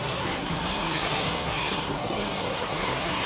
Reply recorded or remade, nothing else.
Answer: remade